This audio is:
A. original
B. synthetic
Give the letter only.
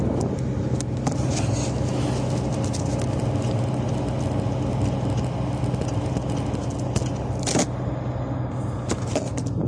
A